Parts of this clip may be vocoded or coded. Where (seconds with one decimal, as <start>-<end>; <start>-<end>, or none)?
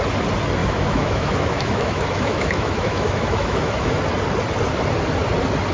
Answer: 0.6-4.0